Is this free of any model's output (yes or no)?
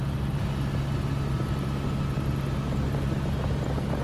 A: yes